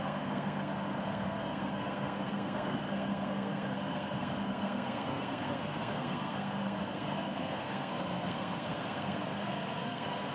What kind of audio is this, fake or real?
fake